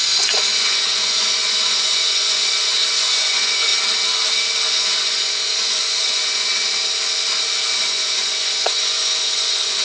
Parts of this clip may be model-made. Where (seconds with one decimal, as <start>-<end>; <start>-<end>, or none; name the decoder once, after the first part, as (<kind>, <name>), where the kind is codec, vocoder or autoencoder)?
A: 0.0-3.7 (vocoder, Vocos); 4.7-6.5; 7.8-9.8